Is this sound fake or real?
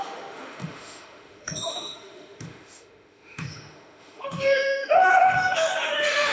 fake